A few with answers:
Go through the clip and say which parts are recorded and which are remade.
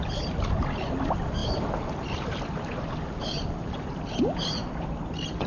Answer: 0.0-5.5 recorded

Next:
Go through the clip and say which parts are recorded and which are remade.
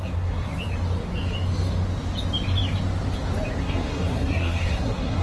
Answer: 0.0-0.5 remade; 0.5-3.6 recorded; 3.6-5.2 remade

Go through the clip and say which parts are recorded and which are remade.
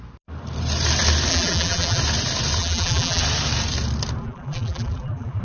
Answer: 0.0-1.3 recorded; 1.3-2.0 remade; 2.0-2.6 recorded; 2.6-3.2 remade; 3.2-4.2 recorded; 4.2-5.4 remade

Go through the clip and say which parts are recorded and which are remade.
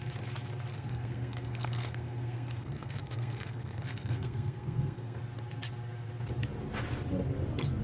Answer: 0.0-0.7 recorded; 0.7-5.2 remade; 5.2-7.8 recorded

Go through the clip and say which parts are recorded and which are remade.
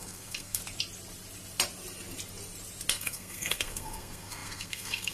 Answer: 0.0-0.6 remade; 0.6-2.9 recorded; 2.9-5.1 remade